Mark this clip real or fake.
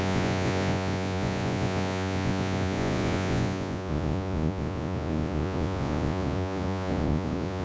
fake